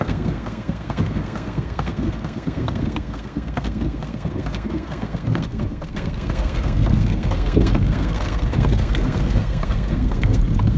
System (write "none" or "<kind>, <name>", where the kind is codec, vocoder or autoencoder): codec, SNAC